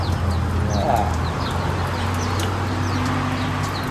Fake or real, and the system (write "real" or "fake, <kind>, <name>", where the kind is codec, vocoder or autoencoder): real